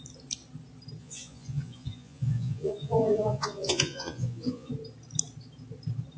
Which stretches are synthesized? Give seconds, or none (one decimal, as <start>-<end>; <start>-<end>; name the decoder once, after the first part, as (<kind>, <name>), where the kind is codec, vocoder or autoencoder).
1.0-4.7 (vocoder, Vocos)